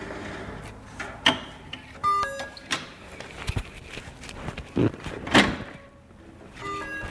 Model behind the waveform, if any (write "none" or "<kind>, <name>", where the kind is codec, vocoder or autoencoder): none